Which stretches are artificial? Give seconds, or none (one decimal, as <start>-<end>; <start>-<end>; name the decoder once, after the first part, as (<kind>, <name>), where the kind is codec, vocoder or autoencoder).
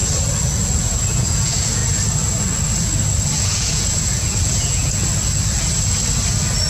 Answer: 0.7-1.8 (vocoder, Vocos); 3.4-5.0